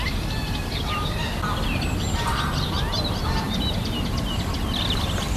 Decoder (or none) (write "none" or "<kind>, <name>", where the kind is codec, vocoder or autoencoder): none